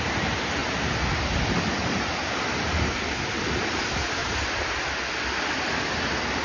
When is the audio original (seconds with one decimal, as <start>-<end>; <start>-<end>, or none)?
0.0-0.6; 1.1-4.2; 4.7-6.4